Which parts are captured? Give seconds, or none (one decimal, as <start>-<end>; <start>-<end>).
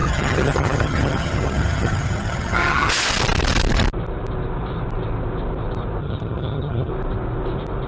2.9-6.0; 6.9-7.9